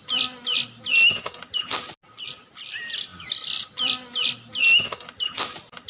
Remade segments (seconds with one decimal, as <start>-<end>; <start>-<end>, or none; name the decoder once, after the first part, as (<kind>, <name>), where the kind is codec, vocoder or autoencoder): none